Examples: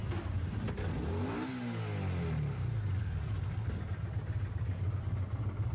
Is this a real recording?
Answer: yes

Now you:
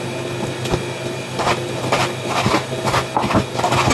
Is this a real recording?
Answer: yes